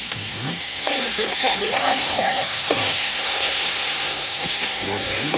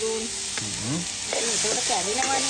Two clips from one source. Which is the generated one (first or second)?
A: first